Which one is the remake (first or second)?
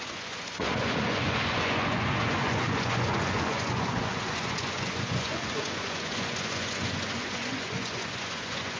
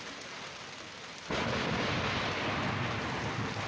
first